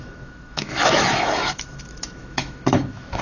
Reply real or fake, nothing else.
fake